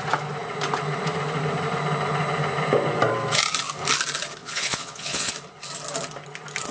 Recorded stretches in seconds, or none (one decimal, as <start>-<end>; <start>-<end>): 0.0-4.4; 5.3-6.7